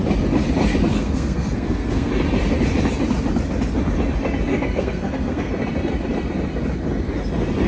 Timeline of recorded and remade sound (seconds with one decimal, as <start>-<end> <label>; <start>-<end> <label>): 0.0-0.9 recorded; 0.9-2.1 remade; 2.1-4.5 recorded; 4.5-5.5 remade; 5.5-7.7 recorded